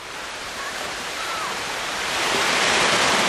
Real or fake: fake